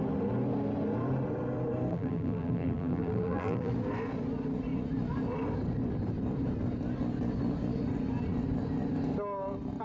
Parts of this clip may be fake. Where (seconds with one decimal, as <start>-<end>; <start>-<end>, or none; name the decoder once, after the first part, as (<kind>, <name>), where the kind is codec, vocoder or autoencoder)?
1.9-3.7 (vocoder, BigVGAN v2)